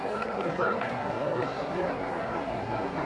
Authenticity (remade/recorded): remade